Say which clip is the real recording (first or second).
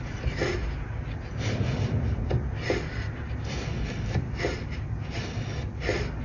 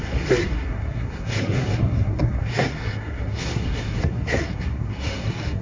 first